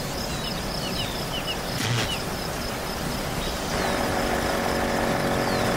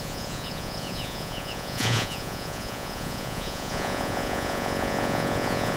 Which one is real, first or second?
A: first